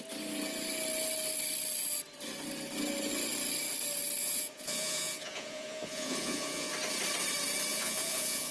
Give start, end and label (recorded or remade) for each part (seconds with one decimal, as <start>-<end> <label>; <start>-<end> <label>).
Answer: 0.0-4.2 recorded; 4.2-6.7 remade; 6.7-7.7 recorded; 7.7-8.5 remade